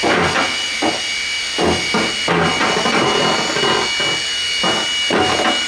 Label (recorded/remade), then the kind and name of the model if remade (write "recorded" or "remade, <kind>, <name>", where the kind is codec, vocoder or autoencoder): recorded